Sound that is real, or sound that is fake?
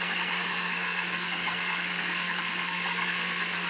fake